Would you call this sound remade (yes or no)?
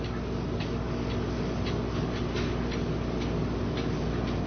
no